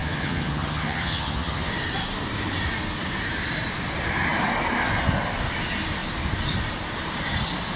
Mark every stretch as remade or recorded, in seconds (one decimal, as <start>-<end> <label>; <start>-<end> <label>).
0.0-1.7 remade; 1.7-7.8 recorded